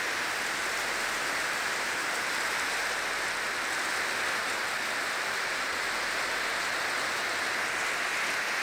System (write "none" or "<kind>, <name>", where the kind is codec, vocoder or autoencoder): none